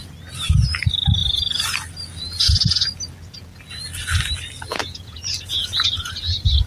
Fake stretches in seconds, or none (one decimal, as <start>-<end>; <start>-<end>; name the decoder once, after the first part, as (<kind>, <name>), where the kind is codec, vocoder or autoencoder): 4.7-6.1 (vocoder, Vocos)